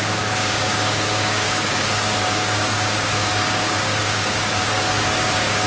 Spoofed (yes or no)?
yes